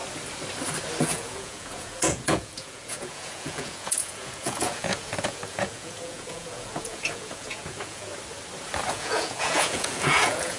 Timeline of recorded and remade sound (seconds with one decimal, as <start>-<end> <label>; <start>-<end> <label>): 0.0-1.0 recorded; 1.0-8.1 remade; 8.1-8.9 recorded; 8.9-10.6 remade